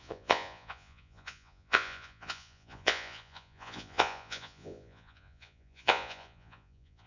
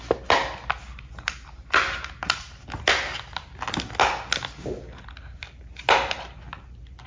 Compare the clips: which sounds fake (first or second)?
first